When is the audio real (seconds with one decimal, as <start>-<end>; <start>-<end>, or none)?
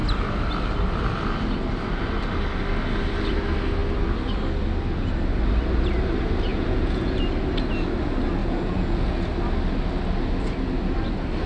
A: 0.0-6.5; 7.2-8.4; 9.3-11.5